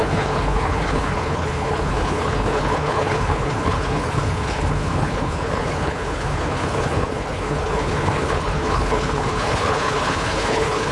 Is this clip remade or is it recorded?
remade